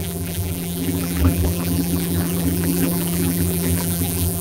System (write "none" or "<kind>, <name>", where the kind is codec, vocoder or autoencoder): vocoder, BigVGAN v2